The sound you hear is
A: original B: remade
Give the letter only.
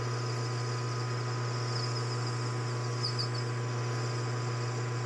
A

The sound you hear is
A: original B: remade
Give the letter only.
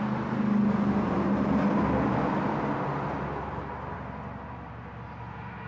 A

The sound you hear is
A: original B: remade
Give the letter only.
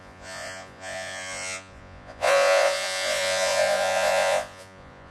B